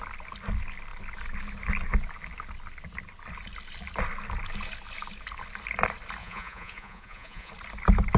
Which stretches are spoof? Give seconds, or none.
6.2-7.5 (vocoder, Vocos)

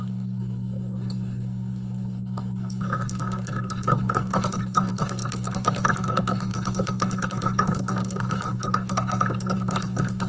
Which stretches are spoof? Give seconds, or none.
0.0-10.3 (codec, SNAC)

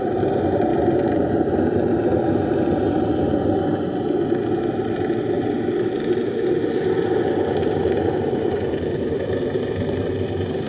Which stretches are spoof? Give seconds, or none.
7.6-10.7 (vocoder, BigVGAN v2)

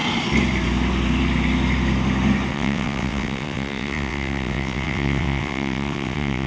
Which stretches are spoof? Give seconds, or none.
2.5-6.5 (vocoder, WaveNeXt)

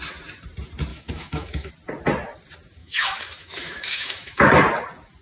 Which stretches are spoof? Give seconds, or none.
0.9-1.7 (autoencoder, DAC-VAE); 2.8-4.5